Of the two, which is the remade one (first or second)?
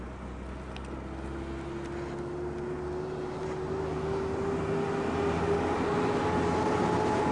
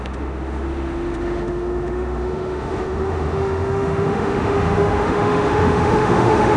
second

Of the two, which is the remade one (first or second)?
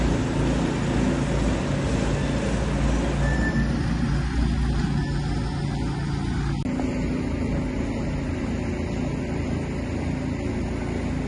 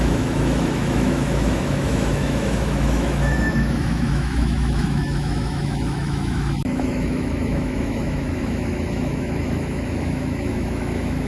second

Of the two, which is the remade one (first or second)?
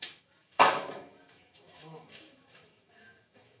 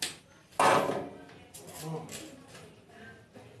first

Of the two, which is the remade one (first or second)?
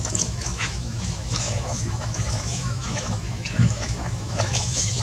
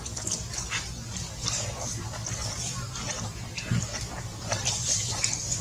first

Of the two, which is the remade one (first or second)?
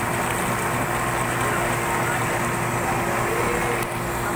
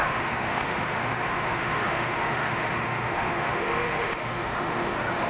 second